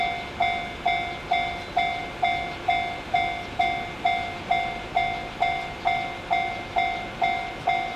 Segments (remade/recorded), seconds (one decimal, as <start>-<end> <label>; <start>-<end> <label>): 0.0-8.0 recorded